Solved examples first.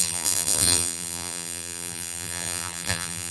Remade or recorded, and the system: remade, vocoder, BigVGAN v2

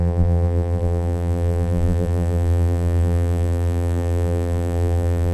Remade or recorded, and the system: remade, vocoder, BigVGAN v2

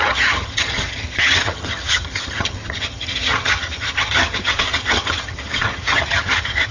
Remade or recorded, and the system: remade, vocoder, HiFi-GAN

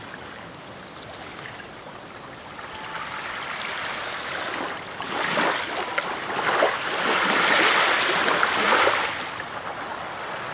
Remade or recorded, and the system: recorded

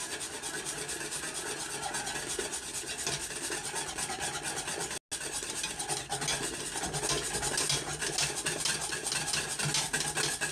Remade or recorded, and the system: recorded